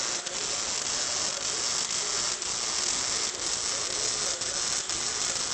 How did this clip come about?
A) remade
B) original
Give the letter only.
B